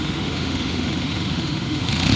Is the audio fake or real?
fake